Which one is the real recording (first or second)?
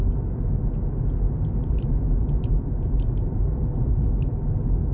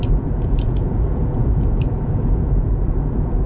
first